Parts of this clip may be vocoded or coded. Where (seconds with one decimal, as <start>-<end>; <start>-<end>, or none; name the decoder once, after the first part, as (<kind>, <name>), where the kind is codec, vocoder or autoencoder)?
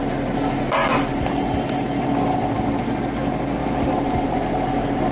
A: 3.6-4.3 (vocoder, BigVGAN v2)